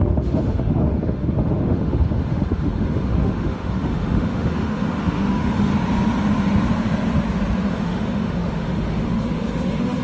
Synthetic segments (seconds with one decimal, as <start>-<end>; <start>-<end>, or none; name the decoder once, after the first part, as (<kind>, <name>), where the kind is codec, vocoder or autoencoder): 0.0-5.7 (autoencoder, DAC-VAE); 7.7-10.0